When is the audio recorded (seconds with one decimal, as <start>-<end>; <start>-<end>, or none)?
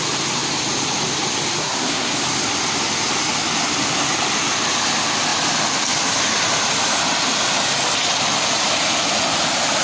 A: 0.0-1.6; 2.1-9.8